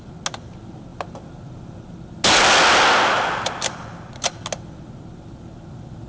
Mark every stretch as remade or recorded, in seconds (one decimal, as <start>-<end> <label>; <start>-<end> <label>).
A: 0.0-6.1 recorded